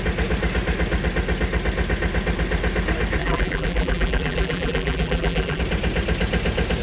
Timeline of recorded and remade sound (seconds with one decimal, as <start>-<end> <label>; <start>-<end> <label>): 0.0-3.2 recorded; 3.2-5.6 remade; 5.6-6.8 recorded